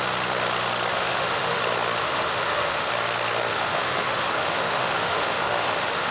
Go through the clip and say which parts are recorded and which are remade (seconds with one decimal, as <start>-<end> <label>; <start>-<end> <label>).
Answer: 0.0-0.9 recorded; 0.9-1.6 remade; 1.6-2.0 recorded; 2.0-2.9 remade; 2.9-3.5 recorded; 3.5-6.1 remade